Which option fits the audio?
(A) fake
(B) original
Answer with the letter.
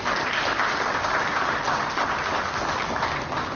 B